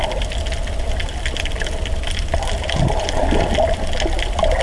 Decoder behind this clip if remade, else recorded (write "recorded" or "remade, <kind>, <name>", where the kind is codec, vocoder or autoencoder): recorded